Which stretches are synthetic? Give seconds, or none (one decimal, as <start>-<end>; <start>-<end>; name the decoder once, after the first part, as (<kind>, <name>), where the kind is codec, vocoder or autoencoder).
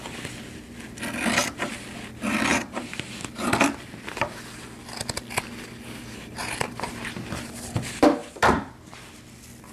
2.5-3.1 (vocoder, BigVGAN v2); 6.4-7.5; 8.2-9.0